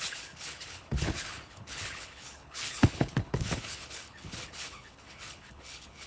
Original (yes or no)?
no